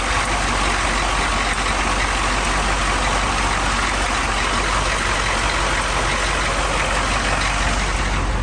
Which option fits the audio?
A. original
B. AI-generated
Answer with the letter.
A